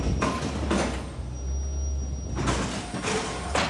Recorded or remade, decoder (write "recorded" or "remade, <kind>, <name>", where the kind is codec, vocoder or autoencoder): recorded